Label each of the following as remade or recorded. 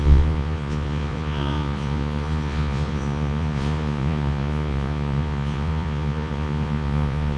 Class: remade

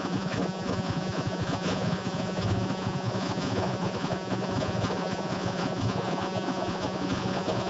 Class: remade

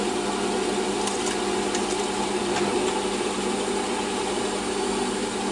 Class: recorded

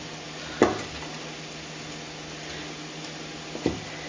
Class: recorded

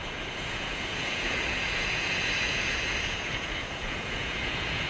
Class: remade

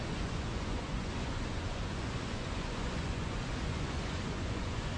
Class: remade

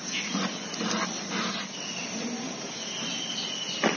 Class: recorded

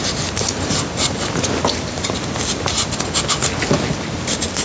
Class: recorded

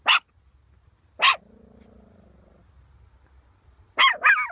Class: recorded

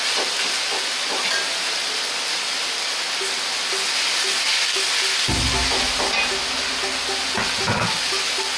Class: recorded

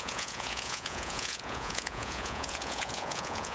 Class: remade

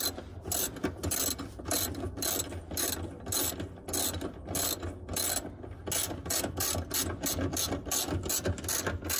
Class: recorded